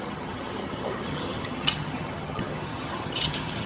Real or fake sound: fake